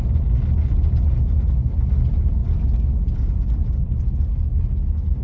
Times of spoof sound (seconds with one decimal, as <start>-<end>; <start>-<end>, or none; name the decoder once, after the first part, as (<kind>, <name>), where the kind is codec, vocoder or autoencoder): none